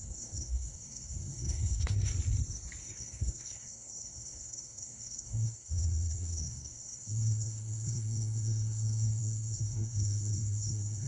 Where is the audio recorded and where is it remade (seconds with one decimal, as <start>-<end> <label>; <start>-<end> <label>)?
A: 0.0-2.1 remade; 2.1-2.8 recorded; 2.8-11.1 remade